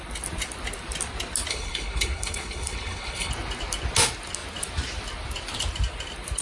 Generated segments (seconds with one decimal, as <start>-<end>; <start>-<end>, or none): 1.5-3.3